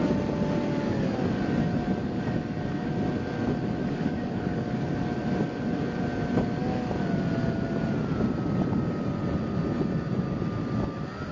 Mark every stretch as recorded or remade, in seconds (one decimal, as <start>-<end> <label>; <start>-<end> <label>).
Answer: 0.0-2.0 recorded; 2.0-2.9 remade; 2.9-3.8 recorded; 3.8-4.9 remade; 4.9-11.3 recorded

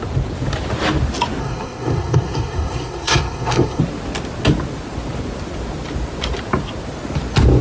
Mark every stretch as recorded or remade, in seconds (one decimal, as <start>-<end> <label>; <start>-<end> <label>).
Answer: 0.0-1.4 recorded; 1.4-3.8 remade; 3.8-7.6 recorded